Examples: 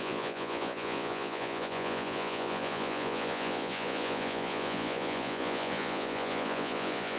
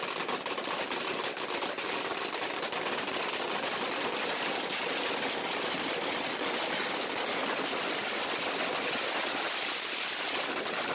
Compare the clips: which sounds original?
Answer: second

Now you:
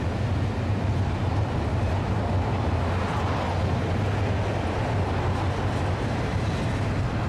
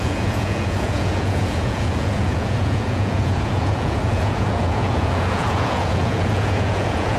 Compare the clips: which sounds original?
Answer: first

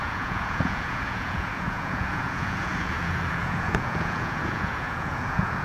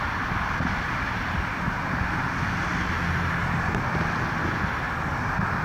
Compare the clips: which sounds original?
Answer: second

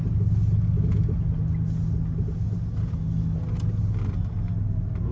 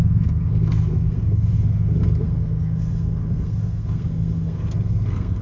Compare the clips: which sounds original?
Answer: first